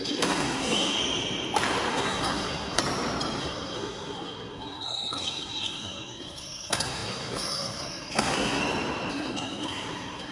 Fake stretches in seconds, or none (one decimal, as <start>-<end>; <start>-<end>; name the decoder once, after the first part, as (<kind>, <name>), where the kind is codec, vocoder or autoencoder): 0.0-1.0 (codec, SNAC); 1.9-2.8; 3.4-8.6; 9.1-10.3